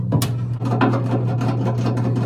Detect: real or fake real